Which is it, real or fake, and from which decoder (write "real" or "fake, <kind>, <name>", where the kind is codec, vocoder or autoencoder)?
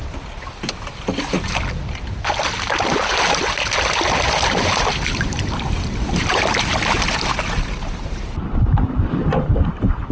fake, vocoder, BigVGAN v2